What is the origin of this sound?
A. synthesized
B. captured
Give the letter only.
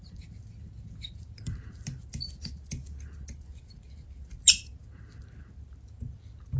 B